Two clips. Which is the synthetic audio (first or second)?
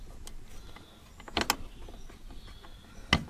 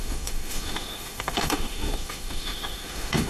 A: second